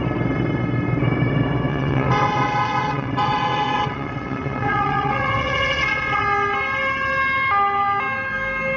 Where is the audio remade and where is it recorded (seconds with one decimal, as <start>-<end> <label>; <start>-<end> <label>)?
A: 0.0-1.7 recorded; 1.7-6.2 remade; 6.2-8.8 recorded